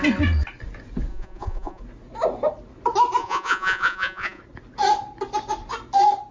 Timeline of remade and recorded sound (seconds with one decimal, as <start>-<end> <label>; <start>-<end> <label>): 0.0-1.1 recorded; 1.1-1.8 remade; 1.8-3.2 recorded; 3.2-4.4 remade; 4.4-6.3 recorded